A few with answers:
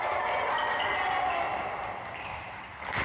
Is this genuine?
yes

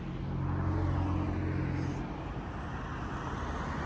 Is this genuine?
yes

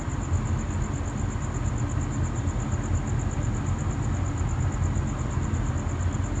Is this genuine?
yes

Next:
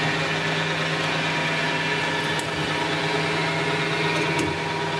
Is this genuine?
yes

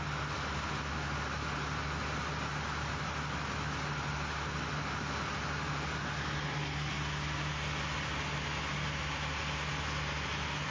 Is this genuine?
yes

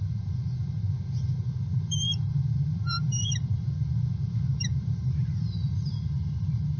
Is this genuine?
no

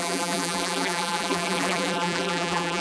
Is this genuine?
no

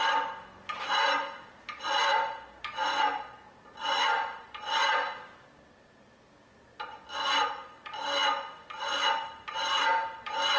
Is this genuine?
yes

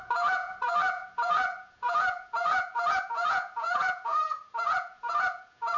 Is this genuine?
no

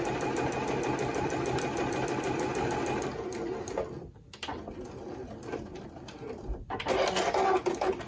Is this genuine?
yes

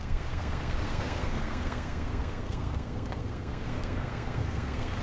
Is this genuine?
no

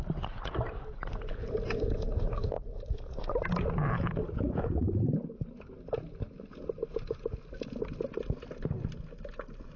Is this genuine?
yes